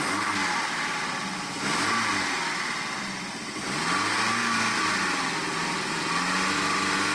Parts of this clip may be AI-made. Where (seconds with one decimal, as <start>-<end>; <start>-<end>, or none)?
none